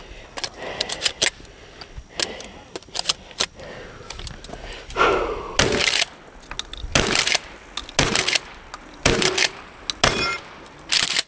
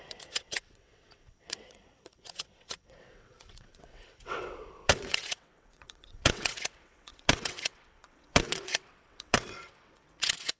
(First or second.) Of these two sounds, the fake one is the second